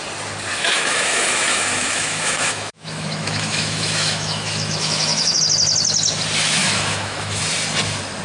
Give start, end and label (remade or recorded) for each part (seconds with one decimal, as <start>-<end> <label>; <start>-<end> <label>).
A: 0.0-0.5 recorded; 0.5-5.4 remade; 5.4-6.6 recorded; 6.6-7.4 remade; 7.4-8.2 recorded